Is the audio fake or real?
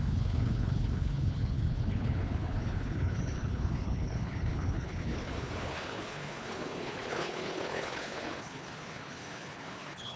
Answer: fake